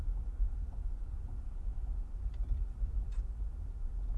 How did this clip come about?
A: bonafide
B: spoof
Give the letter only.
A